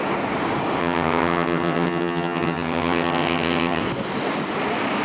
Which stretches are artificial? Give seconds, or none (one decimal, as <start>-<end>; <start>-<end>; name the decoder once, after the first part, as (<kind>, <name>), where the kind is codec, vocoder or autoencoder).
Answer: 0.8-3.8 (vocoder, HiFi-GAN)